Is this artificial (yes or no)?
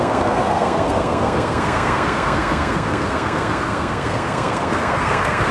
yes